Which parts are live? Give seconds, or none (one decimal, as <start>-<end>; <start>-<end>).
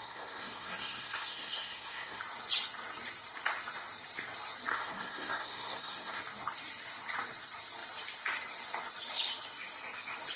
2.2-4.7; 6.2-10.4